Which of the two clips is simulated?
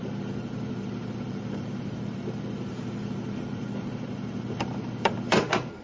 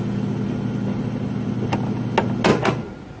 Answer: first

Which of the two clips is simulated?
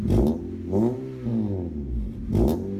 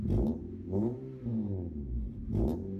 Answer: second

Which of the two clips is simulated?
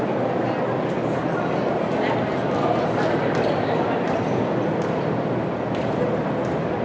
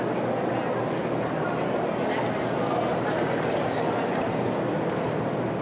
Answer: first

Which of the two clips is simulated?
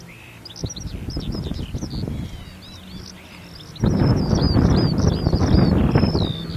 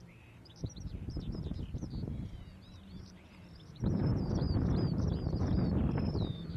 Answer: second